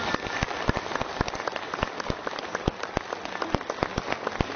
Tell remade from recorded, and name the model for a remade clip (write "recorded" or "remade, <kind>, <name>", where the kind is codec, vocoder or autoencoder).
recorded